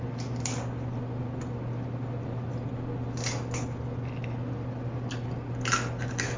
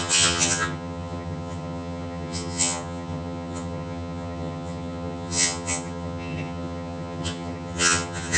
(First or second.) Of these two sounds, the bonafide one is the first